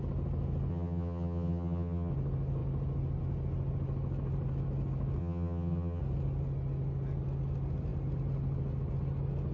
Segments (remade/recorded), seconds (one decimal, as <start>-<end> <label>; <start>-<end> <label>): 0.0-0.7 recorded; 0.7-2.1 remade; 2.1-5.2 recorded; 5.2-6.0 remade; 6.0-9.5 recorded